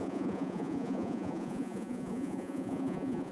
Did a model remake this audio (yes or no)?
yes